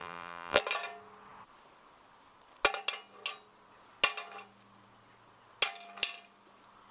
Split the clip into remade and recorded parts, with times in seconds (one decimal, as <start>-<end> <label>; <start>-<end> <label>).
0.0-0.6 remade; 0.6-6.9 recorded